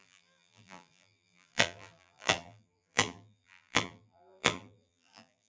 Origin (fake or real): fake